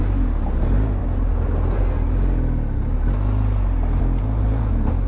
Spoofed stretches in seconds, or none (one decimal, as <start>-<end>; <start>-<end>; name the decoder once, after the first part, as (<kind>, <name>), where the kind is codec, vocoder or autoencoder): none